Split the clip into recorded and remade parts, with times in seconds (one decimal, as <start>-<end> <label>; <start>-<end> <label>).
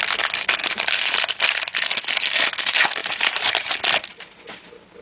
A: 0.0-0.6 recorded; 0.6-1.2 remade; 1.2-3.0 recorded; 3.0-3.6 remade; 3.6-5.0 recorded